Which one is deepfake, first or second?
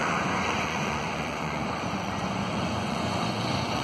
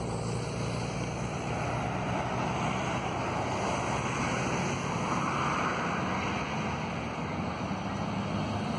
first